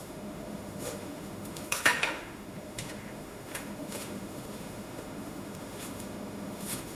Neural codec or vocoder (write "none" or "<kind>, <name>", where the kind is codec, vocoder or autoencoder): autoencoder, DAC-VAE